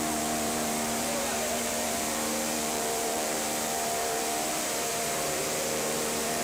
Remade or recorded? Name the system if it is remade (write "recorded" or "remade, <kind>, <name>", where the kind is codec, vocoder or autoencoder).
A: remade, vocoder, BigVGAN v2